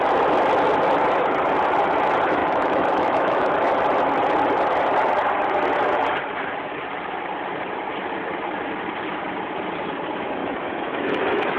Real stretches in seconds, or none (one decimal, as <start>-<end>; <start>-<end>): 0.0-2.4; 3.5-10.4